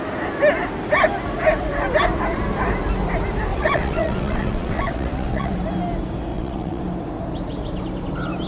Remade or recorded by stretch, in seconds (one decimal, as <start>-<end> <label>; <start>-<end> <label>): 0.0-3.5 recorded; 3.5-5.5 remade; 5.5-6.3 recorded; 6.3-6.8 remade; 6.8-8.5 recorded